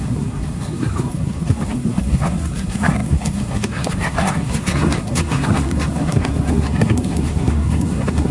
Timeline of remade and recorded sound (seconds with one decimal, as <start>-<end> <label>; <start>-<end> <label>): 0.0-8.3 remade